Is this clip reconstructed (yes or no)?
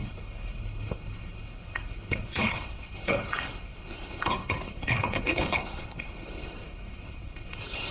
yes